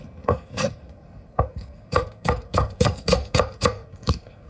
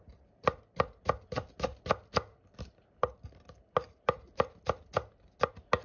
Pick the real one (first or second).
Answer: second